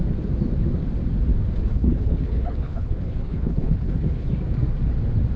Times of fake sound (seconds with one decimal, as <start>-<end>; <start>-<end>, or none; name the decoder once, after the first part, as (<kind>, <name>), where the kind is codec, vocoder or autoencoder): 1.7-4.3 (codec, HILCodec)